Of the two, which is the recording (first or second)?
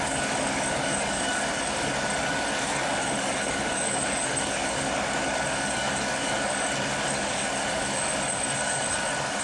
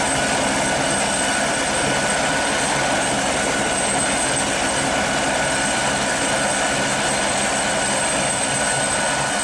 second